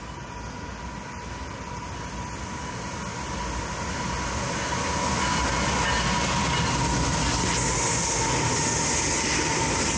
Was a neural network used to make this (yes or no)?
no